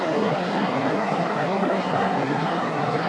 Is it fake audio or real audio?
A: fake